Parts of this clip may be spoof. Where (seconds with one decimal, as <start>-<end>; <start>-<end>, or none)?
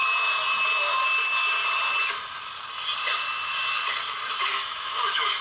4.5-5.4